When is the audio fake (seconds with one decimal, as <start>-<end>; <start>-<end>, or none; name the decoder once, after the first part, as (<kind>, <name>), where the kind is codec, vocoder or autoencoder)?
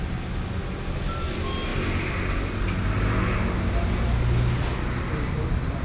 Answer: none